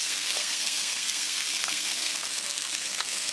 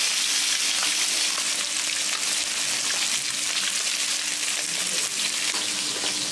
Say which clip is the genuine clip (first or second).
second